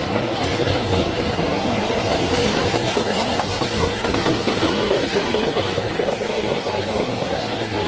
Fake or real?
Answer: fake